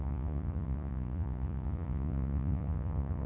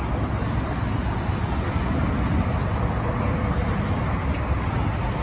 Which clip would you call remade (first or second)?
first